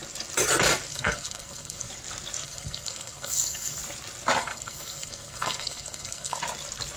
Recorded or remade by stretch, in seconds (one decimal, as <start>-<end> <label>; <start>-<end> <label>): 0.0-0.9 recorded; 0.9-1.9 remade; 1.9-2.4 recorded; 2.4-3.8 remade; 3.8-4.4 recorded; 4.4-6.4 remade; 6.4-7.0 recorded